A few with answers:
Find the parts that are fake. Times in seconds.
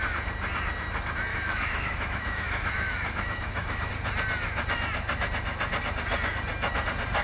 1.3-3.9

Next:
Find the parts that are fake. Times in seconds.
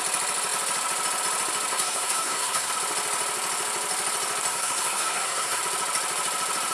1.7-2.7; 4.5-5.6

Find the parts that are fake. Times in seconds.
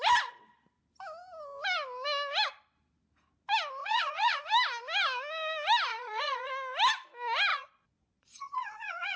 3.8-4.4; 5.9-6.5; 7.5-9.2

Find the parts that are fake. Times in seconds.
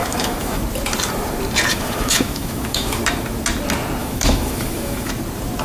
0.0-0.6; 1.7-3.0; 4.0-5.1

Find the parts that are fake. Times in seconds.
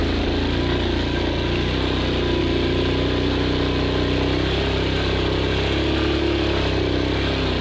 none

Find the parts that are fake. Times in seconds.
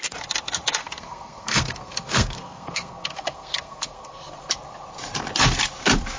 0.8-4.5